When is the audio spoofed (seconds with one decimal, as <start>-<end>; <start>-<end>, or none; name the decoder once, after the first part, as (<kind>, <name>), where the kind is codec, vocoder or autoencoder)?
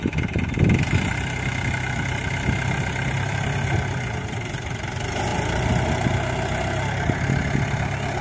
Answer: none